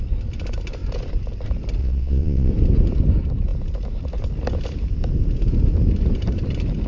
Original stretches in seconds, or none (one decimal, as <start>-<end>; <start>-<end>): 0.0-1.8; 2.5-6.9